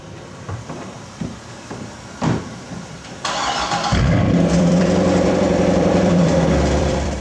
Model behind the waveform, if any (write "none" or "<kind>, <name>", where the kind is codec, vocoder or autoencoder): vocoder, BigVGAN v2